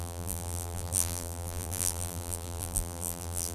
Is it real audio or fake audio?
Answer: fake